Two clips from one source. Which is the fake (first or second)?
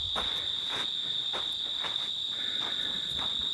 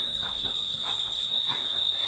second